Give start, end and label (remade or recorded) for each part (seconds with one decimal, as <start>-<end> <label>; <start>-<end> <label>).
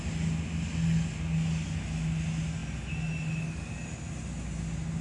0.0-5.0 recorded